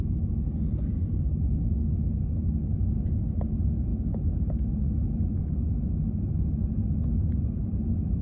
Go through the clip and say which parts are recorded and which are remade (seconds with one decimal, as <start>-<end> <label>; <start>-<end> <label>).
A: 0.0-3.9 recorded; 3.9-4.5 remade; 4.5-8.2 recorded